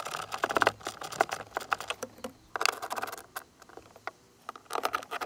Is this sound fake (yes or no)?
no